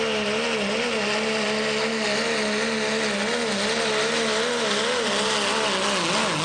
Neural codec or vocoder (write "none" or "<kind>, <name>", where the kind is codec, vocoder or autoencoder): none